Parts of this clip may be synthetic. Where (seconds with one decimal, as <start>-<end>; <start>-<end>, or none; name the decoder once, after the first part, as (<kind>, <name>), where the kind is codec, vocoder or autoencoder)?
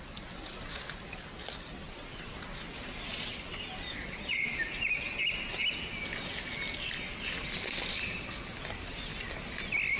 3.9-4.6 (vocoder, Vocos)